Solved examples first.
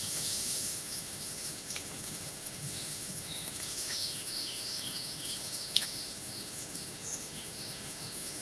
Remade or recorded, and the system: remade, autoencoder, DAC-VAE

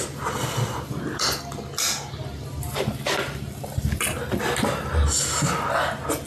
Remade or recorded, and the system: recorded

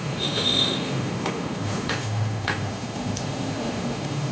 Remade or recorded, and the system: remade, autoencoder, DAC-VAE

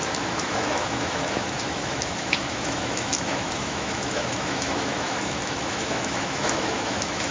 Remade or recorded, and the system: remade, autoencoder, DAC-VAE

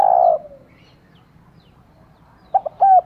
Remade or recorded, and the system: recorded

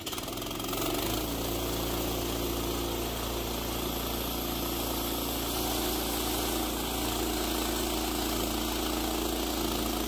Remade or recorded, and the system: recorded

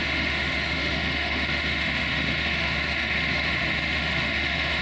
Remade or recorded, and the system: remade, autoencoder, DAC-VAE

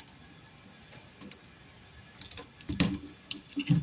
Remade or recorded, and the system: recorded